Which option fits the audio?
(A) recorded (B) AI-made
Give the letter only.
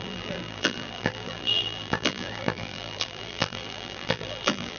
B